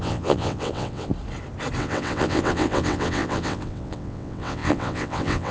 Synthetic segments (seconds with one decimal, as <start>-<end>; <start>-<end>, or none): 0.0-1.1; 1.8-5.5